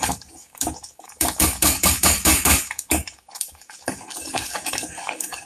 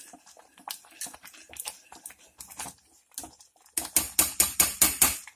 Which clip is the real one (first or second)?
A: second